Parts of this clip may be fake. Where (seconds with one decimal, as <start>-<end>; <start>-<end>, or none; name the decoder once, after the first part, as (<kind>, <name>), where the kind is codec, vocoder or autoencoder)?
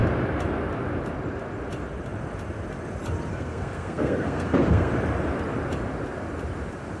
3.3-4.9 (codec, SNAC)